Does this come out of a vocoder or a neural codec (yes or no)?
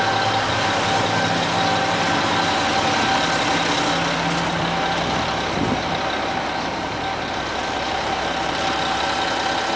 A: no